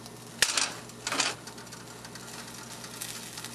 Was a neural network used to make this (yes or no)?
no